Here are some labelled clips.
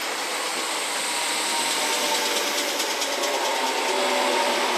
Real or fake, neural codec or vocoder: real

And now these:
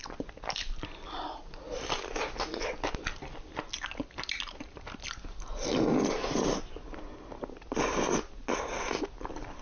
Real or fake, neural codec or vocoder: real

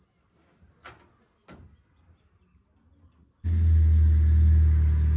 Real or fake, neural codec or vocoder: real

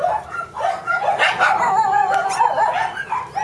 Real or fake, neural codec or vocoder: real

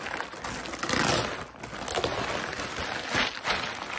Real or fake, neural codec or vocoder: real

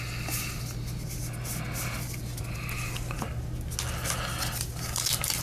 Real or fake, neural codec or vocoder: real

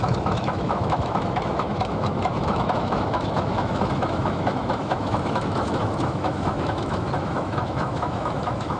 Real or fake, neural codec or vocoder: fake, autoencoder, DAC-VAE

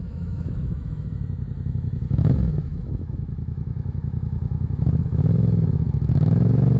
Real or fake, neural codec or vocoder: fake, autoencoder, DAC-VAE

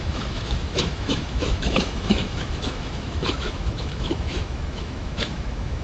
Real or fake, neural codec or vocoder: fake, autoencoder, DAC-VAE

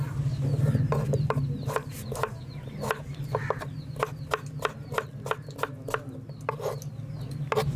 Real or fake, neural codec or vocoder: real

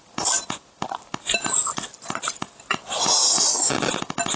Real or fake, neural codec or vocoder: real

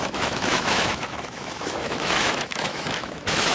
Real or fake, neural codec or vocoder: fake, autoencoder, DAC-VAE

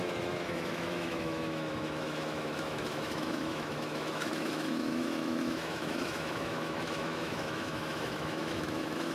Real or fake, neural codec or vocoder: fake, autoencoder, DAC-VAE